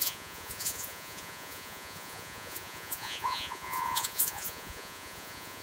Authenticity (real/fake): fake